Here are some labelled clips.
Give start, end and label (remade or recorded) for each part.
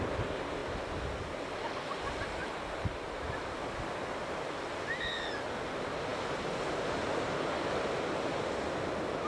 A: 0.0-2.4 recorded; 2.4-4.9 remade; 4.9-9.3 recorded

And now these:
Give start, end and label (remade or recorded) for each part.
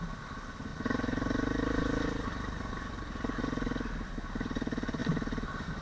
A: 0.0-0.7 recorded; 0.7-3.4 remade; 3.4-5.0 recorded; 5.0-5.8 remade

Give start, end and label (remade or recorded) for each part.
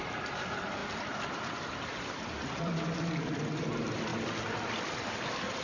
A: 0.0-0.8 remade; 0.8-2.6 recorded; 2.6-4.1 remade; 4.1-4.7 recorded; 4.7-5.6 remade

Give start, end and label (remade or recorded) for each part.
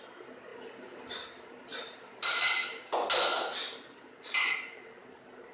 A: 0.0-1.7 recorded; 1.7-2.4 remade; 2.4-5.5 recorded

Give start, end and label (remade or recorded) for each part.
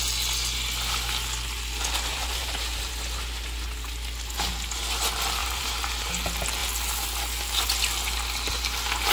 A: 0.0-2.1 recorded; 2.1-2.9 remade; 2.9-5.4 recorded; 5.4-6.1 remade; 6.1-9.1 recorded